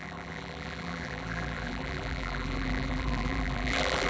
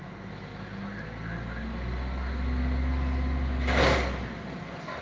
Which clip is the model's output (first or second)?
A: first